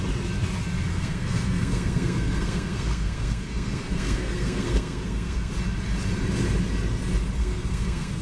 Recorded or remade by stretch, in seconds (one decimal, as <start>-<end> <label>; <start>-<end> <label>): 0.0-0.9 recorded; 0.9-5.5 remade; 5.5-7.4 recorded; 7.4-8.2 remade

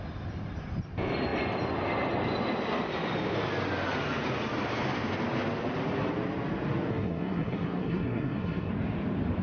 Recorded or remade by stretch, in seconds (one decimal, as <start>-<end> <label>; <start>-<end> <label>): 0.0-6.9 recorded; 6.9-8.7 remade; 8.7-9.4 recorded

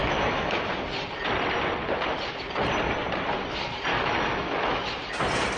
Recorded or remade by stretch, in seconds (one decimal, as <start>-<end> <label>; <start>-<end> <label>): 0.0-0.6 remade; 0.6-3.9 recorded; 3.9-4.9 remade; 4.9-5.6 recorded

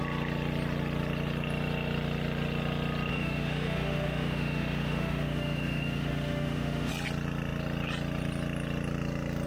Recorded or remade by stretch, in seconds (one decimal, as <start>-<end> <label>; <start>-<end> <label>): 0.0-3.1 recorded; 3.1-6.9 remade; 6.9-9.5 recorded

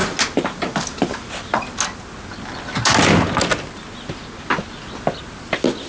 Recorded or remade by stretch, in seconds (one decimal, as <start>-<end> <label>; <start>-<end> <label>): 0.0-5.9 recorded

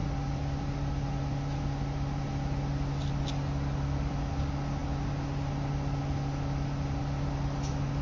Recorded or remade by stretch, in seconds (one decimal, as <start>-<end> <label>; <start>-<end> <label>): 0.0-8.0 recorded

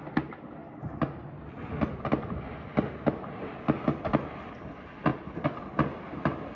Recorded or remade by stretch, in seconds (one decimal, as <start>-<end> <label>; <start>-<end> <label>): 0.0-6.5 recorded